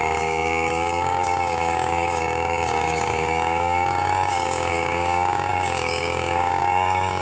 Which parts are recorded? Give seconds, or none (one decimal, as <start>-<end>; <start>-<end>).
none